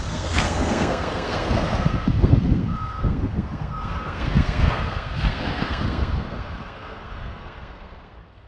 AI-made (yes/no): yes